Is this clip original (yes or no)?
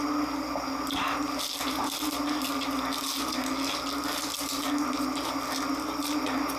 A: yes